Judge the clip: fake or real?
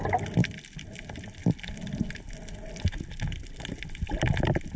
real